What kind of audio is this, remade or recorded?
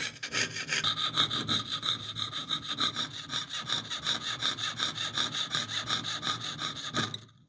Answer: recorded